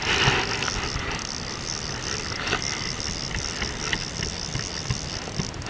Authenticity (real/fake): real